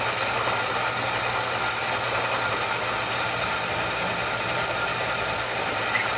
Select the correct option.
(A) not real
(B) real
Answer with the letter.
B